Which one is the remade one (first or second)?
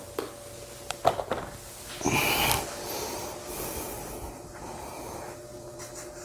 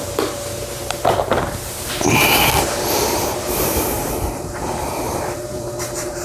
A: second